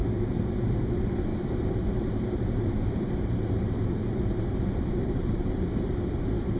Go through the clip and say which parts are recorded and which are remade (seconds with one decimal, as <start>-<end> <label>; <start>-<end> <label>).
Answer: 0.0-0.9 recorded; 0.9-6.6 remade